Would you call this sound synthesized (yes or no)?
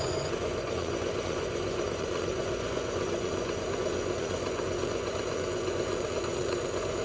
yes